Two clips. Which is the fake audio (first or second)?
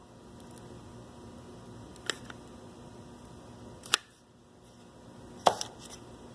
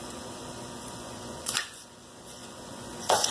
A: second